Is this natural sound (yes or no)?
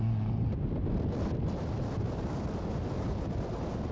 yes